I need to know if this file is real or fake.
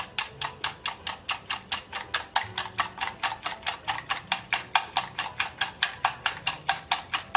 real